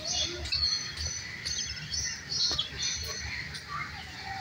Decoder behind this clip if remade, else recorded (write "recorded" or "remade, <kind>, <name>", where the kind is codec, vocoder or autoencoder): recorded